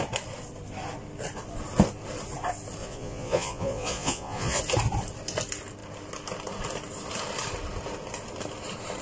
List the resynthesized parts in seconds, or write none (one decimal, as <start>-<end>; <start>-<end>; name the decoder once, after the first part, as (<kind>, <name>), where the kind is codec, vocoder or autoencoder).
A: 2.8-4.6 (vocoder, Vocos)

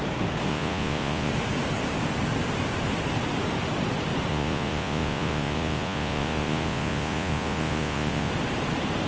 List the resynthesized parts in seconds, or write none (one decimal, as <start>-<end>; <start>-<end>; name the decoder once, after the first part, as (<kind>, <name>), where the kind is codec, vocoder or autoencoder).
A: 0.5-1.3 (vocoder, Vocos); 4.3-8.3

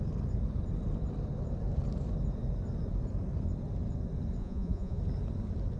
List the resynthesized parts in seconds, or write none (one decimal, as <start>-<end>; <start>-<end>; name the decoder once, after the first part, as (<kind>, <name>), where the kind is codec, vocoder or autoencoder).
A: 4.4-5.0 (vocoder, Vocos)

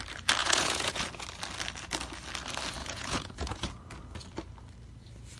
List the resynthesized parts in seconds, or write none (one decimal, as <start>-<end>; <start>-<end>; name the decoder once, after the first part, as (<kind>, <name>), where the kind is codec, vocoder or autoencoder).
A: 0.4-1.0 (vocoder, Vocos); 2.8-3.7